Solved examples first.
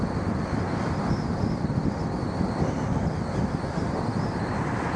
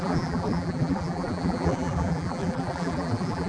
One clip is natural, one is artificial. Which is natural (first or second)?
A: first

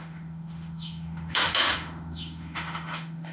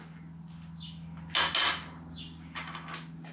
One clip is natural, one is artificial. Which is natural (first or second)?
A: second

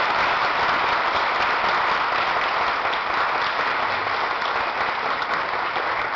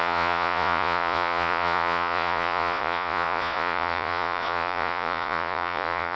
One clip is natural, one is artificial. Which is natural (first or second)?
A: first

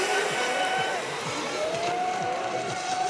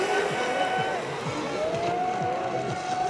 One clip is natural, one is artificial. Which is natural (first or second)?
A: second